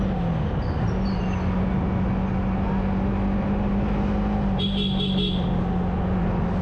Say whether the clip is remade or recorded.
recorded